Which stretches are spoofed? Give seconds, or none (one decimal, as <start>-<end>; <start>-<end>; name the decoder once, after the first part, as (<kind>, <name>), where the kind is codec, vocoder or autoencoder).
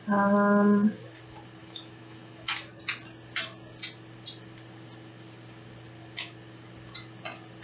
1.6-2.8 (autoencoder, DAC-VAE)